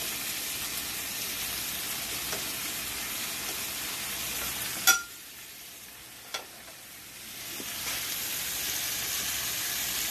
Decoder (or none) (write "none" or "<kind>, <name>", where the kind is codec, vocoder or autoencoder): vocoder, BigVGAN v2